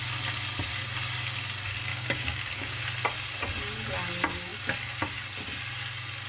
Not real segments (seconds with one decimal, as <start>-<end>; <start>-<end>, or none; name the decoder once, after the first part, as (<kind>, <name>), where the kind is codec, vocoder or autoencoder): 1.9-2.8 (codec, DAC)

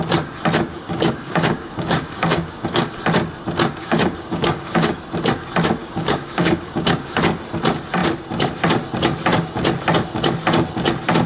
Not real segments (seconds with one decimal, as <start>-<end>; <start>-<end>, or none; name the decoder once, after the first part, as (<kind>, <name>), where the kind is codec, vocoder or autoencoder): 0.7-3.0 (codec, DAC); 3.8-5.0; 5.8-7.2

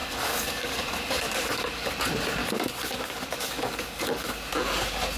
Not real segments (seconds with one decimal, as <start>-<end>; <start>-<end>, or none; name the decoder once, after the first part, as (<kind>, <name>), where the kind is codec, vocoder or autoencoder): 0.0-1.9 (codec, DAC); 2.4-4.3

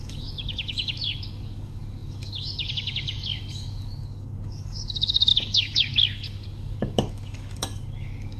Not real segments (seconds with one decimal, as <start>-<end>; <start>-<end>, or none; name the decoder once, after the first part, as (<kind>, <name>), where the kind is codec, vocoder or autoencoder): 0.0-8.4 (codec, DAC)

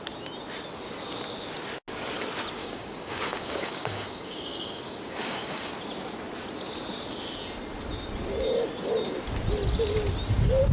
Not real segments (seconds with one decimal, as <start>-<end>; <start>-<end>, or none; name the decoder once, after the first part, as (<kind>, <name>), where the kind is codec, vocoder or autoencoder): 2.6-5.7 (codec, DAC)

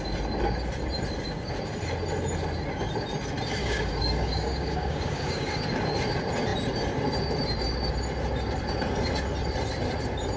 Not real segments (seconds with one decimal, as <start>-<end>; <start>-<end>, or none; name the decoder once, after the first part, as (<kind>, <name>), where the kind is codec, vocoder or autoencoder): 3.6-5.6 (codec, DAC)

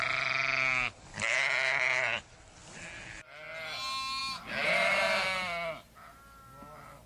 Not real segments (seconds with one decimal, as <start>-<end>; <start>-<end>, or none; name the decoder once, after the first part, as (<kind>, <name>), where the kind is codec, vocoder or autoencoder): none

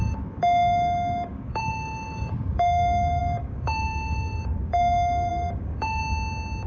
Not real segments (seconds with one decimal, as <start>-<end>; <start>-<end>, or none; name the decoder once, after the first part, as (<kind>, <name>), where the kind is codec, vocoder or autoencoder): 0.0-6.0 (codec, DAC)